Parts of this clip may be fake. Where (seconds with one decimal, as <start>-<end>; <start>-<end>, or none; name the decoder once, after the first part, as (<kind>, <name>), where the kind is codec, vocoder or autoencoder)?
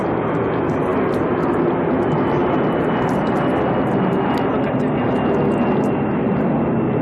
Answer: none